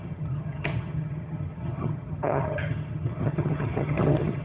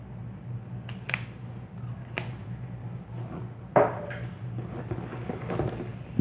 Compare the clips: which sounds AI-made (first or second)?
first